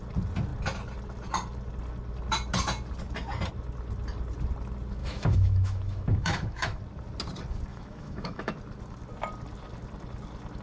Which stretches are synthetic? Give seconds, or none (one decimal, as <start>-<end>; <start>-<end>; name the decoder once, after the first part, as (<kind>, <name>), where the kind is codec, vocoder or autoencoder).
5.0-6.8 (autoencoder, DAC-VAE); 7.7-8.5